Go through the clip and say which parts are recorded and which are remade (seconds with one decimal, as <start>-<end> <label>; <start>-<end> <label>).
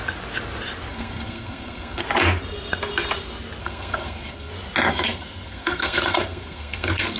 0.0-0.9 recorded; 0.9-2.0 remade; 2.0-3.6 recorded; 3.6-4.5 remade; 4.5-4.9 recorded; 4.9-7.2 remade